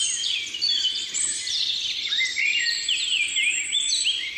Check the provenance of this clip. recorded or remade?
remade